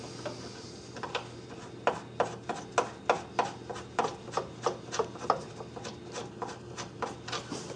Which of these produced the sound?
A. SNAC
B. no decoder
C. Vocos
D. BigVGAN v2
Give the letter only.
B